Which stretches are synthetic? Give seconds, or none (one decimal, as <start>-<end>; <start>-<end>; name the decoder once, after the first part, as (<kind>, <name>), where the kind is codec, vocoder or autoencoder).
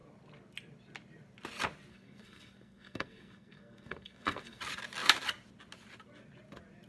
1.9-4.6 (codec, SNAC)